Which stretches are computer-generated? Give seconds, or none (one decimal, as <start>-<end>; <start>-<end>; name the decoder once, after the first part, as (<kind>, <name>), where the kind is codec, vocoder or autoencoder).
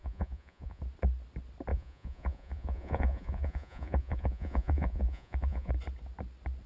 0.0-0.8 (vocoder, Vocos); 1.7-5.7